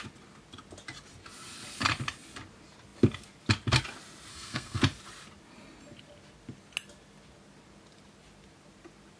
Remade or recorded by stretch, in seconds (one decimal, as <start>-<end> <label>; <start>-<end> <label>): 0.0-4.3 recorded; 4.3-4.8 remade; 4.8-9.2 recorded